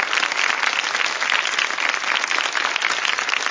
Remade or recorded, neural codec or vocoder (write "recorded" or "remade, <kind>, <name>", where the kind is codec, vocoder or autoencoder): recorded